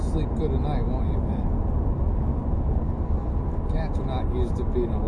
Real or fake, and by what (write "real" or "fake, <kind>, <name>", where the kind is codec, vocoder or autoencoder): real